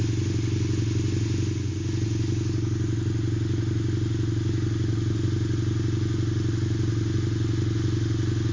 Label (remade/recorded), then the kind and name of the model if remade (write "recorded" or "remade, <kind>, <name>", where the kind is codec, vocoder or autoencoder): recorded